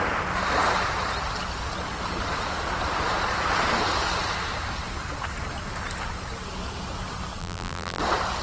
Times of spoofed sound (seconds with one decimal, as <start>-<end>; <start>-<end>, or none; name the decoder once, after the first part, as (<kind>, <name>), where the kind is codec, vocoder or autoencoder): 7.4-8.0 (vocoder, BigVGAN v2)